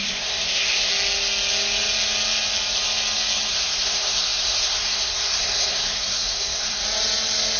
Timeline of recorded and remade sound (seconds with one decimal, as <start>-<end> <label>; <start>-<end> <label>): 0.0-0.9 remade; 0.9-3.5 recorded; 3.5-6.8 remade; 6.8-7.6 recorded